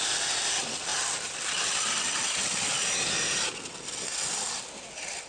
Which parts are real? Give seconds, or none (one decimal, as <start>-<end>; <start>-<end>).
0.0-5.3